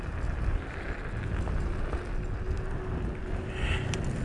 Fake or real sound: real